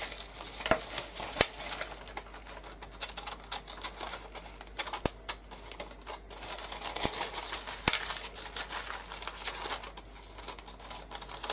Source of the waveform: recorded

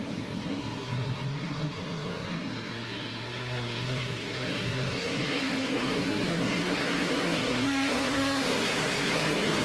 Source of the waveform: remade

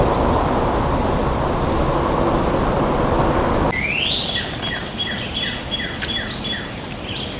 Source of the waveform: recorded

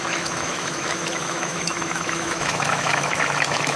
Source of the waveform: remade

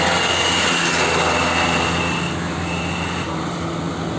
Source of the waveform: recorded